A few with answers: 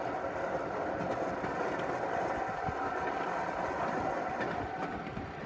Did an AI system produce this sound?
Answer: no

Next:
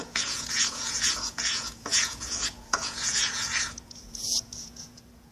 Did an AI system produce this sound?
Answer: yes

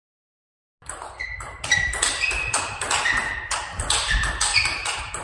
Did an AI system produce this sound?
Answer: no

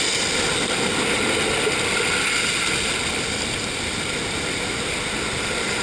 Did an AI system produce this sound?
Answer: no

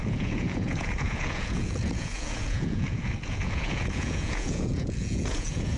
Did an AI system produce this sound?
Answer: yes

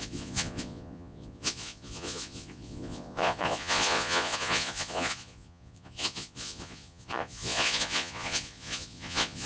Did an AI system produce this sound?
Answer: yes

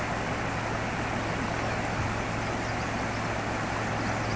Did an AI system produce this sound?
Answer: no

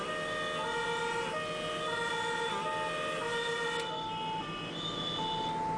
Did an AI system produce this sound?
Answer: no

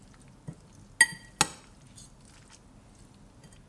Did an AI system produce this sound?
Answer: no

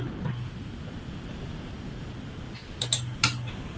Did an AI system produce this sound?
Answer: no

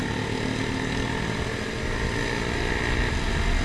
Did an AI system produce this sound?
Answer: no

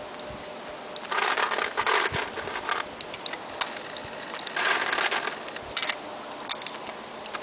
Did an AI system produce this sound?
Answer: no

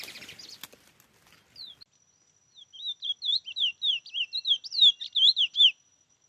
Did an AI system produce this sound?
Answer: no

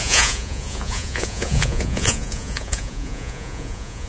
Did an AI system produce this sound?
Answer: yes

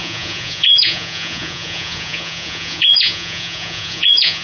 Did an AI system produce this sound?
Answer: yes